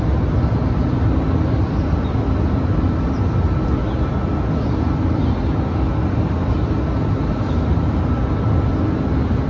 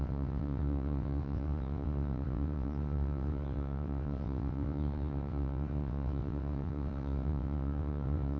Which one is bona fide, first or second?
first